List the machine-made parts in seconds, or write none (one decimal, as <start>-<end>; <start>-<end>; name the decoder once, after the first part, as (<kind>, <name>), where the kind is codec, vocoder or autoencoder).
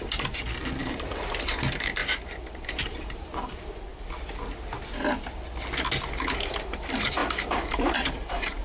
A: 0.0-3.9 (vocoder, BigVGAN v2); 6.5-8.6